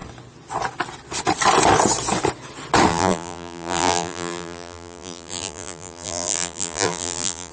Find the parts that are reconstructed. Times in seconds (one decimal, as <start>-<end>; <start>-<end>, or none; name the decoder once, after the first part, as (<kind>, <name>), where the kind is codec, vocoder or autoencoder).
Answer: 2.9-7.5 (vocoder, BigVGAN v2)